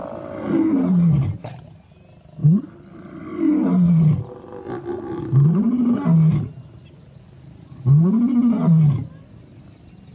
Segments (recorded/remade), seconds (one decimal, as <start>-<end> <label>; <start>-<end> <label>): 0.0-10.1 recorded

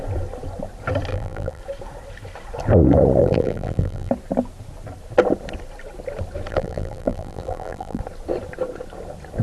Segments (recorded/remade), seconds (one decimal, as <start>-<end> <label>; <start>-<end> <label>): 0.0-1.1 recorded; 1.1-1.6 remade; 1.6-3.2 recorded; 3.2-4.1 remade; 4.1-6.5 recorded; 6.5-8.0 remade; 8.0-9.4 recorded

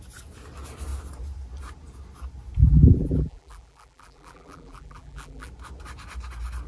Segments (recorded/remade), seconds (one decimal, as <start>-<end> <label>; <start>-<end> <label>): 0.0-2.6 recorded; 2.6-5.5 remade; 5.5-6.7 recorded

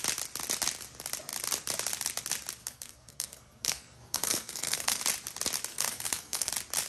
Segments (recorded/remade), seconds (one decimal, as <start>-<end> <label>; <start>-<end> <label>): 0.0-2.6 recorded; 2.6-5.0 remade; 5.0-5.7 recorded; 5.7-6.5 remade; 6.5-6.9 recorded

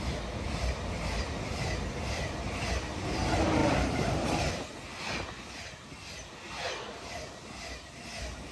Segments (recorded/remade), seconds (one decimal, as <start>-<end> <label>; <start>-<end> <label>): 0.0-3.6 recorded; 3.6-4.5 remade; 4.5-8.5 recorded

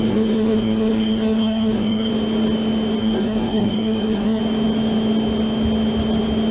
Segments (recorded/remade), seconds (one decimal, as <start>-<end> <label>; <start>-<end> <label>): 0.0-2.1 remade; 2.1-3.0 recorded; 3.0-4.4 remade; 4.4-6.5 recorded